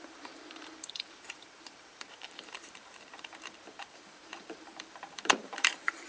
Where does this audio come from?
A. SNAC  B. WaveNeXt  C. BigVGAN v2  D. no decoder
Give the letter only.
C